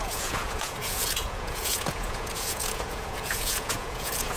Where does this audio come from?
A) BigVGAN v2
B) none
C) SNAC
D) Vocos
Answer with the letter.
D